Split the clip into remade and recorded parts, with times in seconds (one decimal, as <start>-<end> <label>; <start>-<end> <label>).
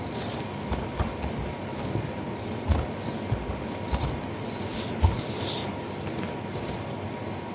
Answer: 0.0-7.5 recorded